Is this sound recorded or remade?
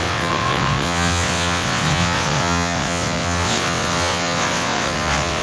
remade